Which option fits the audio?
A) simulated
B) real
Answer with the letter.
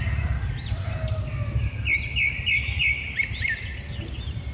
B